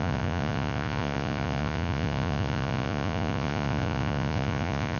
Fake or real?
fake